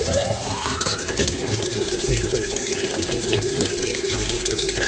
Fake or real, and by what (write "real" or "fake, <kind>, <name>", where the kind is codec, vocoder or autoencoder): fake, codec, SNAC